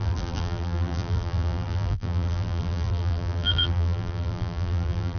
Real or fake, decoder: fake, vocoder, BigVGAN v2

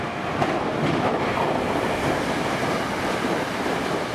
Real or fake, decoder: real